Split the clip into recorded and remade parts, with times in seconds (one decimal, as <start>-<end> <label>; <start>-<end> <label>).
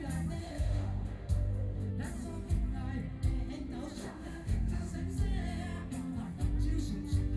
0.0-0.4 recorded; 0.4-1.9 remade; 1.9-4.0 recorded; 4.0-4.9 remade; 4.9-7.4 recorded